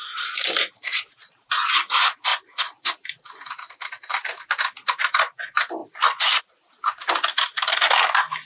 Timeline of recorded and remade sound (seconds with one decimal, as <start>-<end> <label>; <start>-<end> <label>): 0.0-1.5 remade; 1.5-8.4 recorded